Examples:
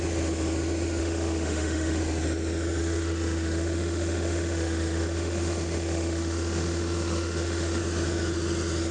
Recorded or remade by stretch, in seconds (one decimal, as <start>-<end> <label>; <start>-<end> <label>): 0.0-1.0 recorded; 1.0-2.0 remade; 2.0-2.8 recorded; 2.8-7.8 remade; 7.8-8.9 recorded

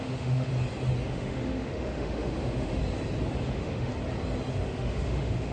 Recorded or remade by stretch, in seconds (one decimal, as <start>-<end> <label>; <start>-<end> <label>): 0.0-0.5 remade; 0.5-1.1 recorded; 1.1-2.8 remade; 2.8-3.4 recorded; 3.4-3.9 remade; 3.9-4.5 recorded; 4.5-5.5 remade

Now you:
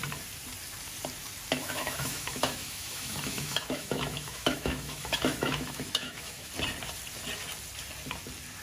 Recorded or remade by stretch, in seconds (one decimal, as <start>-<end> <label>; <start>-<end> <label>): 0.0-1.6 recorded; 1.6-6.5 remade; 6.5-8.6 recorded

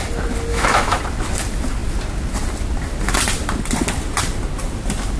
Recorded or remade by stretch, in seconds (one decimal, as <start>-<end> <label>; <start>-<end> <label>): 0.0-0.5 recorded; 0.5-1.0 remade; 1.0-5.2 recorded

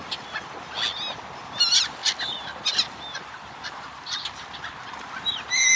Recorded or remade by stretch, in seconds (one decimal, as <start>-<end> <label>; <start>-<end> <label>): 0.0-5.8 recorded

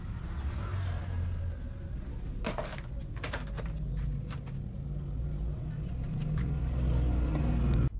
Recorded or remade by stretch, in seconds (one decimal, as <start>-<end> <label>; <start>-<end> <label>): 0.0-8.0 recorded

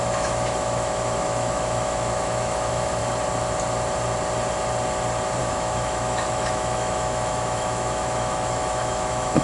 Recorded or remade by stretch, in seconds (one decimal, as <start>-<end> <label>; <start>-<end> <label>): 0.0-3.0 remade; 3.0-5.4 recorded; 5.4-9.4 remade

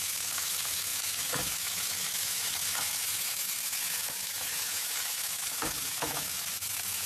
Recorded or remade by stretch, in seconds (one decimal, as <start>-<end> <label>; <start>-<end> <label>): 0.0-7.1 remade